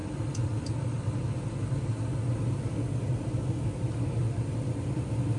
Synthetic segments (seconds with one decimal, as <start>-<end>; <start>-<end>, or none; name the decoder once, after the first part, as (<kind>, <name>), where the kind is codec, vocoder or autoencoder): 0.0-1.2 (vocoder, BigVGAN v2); 4.2-5.4